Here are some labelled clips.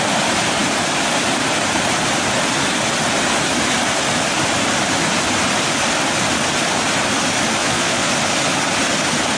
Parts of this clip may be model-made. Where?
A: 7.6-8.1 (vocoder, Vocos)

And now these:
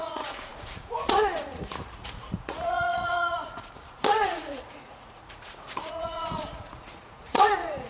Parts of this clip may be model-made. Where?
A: 0.0-7.9 (vocoder, Vocos)

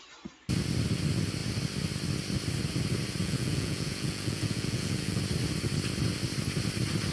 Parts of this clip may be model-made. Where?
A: 3.2-5.2 (vocoder, Vocos)

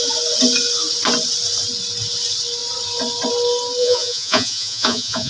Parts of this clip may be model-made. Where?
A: 3.8-5.3 (vocoder, Vocos)

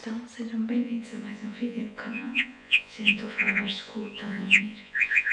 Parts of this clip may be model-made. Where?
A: 0.7-5.3 (vocoder, Vocos)

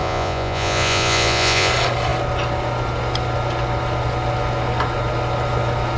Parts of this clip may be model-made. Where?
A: 0.0-1.7 (vocoder, Vocos)

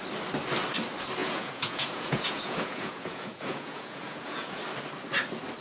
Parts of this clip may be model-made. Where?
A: 1.2-4.6 (vocoder, Vocos)